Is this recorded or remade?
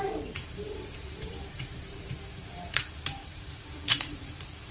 remade